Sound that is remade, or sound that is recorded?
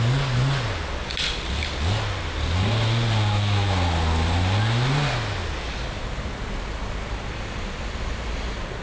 recorded